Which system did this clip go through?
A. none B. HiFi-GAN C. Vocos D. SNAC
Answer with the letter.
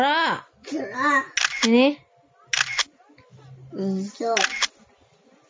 A